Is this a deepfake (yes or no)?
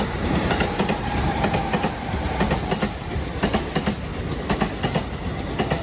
no